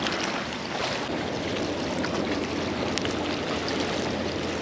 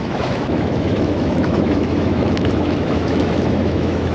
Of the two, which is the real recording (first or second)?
first